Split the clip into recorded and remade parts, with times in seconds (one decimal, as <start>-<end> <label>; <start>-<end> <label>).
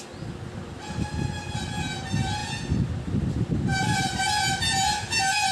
0.0-3.7 recorded; 3.7-4.2 remade; 4.2-5.5 recorded